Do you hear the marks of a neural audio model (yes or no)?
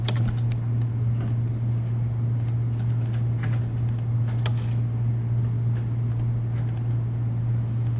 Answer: no